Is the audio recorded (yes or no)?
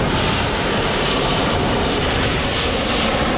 no